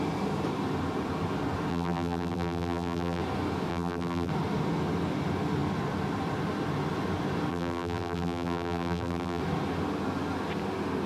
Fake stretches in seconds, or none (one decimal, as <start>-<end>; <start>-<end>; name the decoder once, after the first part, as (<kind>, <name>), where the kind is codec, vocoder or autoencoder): 1.7-3.2 (vocoder, BigVGAN v2); 3.7-4.3; 7.5-9.4